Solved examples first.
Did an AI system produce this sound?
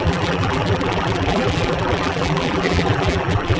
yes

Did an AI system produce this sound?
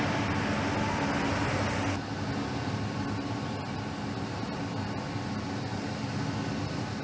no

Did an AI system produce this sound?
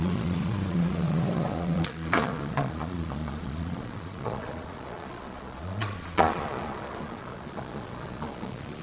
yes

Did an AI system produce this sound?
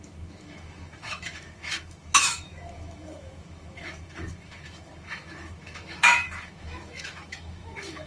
yes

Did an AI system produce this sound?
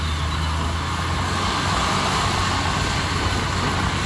no